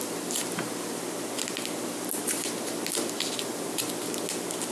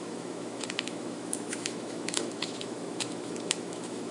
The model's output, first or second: second